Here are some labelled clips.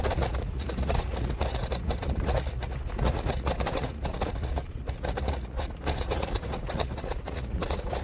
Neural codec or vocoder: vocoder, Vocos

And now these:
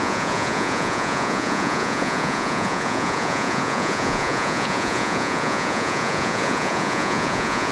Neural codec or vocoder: vocoder, Vocos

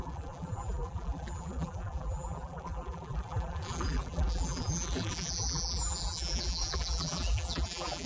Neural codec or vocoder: vocoder, BigVGAN v2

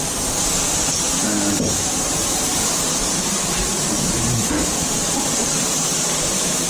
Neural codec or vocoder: vocoder, BigVGAN v2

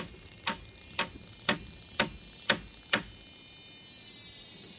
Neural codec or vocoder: none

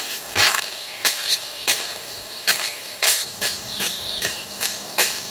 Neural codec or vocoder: codec, DAC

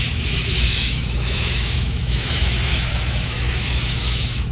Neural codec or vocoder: autoencoder, DAC-VAE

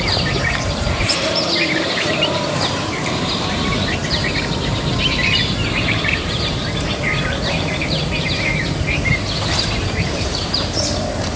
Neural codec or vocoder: vocoder, BigVGAN v2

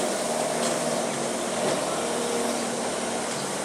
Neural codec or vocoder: vocoder, BigVGAN v2